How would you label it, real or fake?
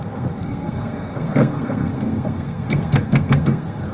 fake